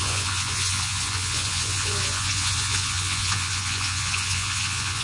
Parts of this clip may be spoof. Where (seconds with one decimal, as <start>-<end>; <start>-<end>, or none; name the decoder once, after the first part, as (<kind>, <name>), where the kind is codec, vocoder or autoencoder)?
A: 0.0-5.0 (vocoder, Vocos)